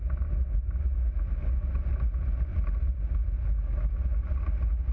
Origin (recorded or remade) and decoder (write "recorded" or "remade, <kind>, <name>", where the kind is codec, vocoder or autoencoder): recorded